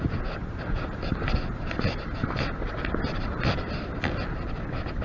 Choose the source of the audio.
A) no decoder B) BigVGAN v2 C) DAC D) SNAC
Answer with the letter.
A